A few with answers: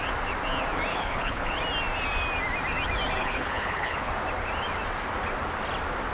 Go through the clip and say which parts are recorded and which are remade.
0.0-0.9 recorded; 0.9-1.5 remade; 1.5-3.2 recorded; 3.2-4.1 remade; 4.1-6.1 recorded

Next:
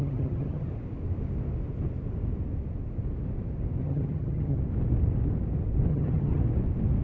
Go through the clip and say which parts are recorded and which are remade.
0.0-0.7 remade; 0.7-3.8 recorded; 3.8-4.6 remade; 4.6-5.9 recorded; 5.9-6.4 remade; 6.4-7.0 recorded

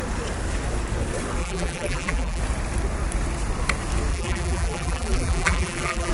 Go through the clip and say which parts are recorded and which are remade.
0.0-1.4 recorded; 1.4-2.4 remade; 2.4-4.1 recorded; 4.1-6.1 remade

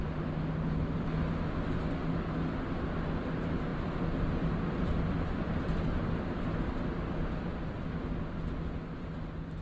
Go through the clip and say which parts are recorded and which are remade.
0.0-3.7 recorded; 3.7-8.0 remade; 8.0-9.6 recorded

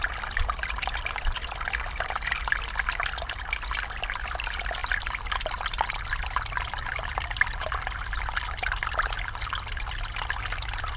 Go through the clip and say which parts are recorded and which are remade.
0.0-11.0 recorded

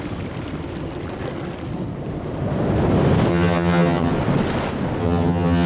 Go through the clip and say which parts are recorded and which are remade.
0.0-3.3 recorded; 3.3-4.1 remade; 4.1-5.0 recorded; 5.0-5.7 remade

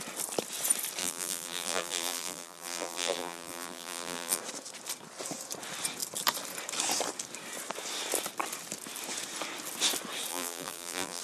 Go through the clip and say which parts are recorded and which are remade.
0.0-1.0 recorded; 1.0-4.4 remade; 4.4-10.3 recorded; 10.3-11.2 remade